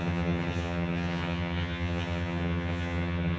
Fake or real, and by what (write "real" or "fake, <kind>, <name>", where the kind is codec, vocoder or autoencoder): fake, vocoder, HiFi-GAN